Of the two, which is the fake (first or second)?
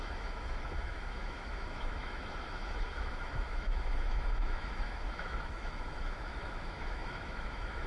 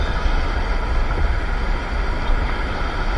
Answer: first